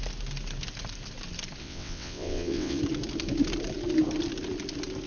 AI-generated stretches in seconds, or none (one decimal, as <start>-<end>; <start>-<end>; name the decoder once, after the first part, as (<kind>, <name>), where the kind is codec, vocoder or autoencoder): 1.6-2.8 (vocoder, WaveNeXt)